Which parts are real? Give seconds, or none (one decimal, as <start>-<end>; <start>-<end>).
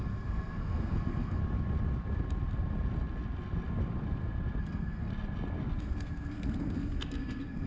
1.4-4.6; 5.1-5.8